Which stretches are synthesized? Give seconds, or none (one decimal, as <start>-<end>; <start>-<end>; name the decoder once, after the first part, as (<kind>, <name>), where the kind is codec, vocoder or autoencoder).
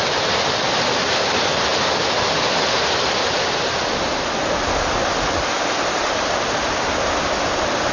none